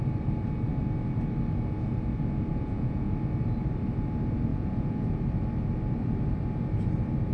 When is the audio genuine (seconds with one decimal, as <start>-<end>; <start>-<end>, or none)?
0.0-2.5; 3.1-4.5; 5.2-7.3